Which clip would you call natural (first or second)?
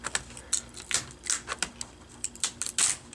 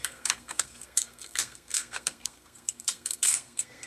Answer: first